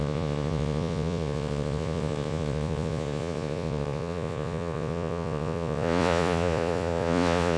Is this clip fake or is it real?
fake